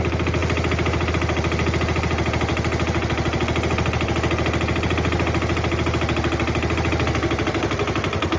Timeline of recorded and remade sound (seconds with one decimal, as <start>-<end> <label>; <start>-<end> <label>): 0.0-8.4 recorded